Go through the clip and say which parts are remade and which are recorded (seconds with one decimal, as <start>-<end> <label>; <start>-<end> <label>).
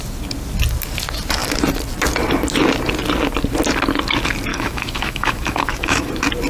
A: 0.0-4.5 recorded; 4.5-6.1 remade; 6.1-6.5 recorded